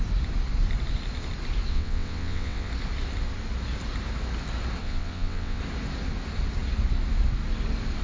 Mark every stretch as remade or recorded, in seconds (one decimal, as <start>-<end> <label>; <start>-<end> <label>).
0.0-1.7 recorded; 1.7-2.7 remade; 2.7-4.8 recorded; 4.8-5.6 remade; 5.6-8.0 recorded